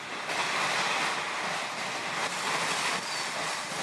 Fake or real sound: real